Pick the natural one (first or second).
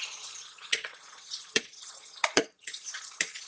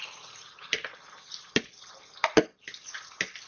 second